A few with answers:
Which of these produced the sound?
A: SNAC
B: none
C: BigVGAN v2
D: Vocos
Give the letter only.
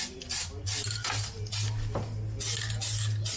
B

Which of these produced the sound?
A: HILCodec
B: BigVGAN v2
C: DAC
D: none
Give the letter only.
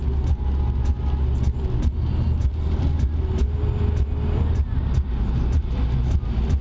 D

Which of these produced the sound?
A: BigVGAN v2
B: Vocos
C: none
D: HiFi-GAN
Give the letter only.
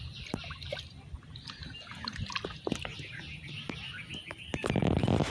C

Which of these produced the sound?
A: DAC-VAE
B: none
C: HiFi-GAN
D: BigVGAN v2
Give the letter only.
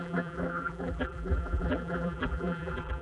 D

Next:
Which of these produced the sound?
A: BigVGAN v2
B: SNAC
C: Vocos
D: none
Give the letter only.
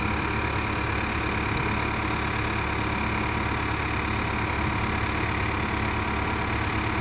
D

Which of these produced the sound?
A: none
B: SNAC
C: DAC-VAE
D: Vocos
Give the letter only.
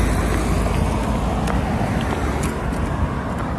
A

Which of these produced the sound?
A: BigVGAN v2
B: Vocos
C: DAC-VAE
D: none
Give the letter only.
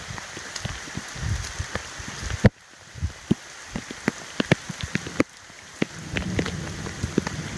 D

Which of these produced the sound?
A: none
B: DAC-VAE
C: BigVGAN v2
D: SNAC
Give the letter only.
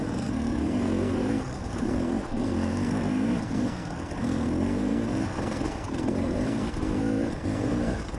D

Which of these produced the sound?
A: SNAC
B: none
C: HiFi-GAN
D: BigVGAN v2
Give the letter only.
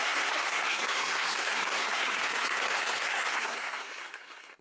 A